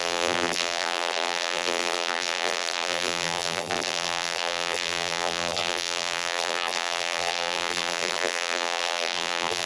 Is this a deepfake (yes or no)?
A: yes